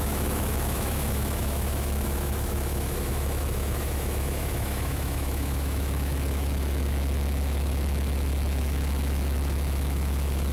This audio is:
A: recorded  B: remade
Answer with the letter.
B